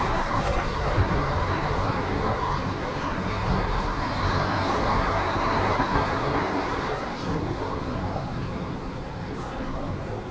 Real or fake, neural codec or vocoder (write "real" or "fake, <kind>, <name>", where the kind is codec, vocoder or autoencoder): fake, codec, SNAC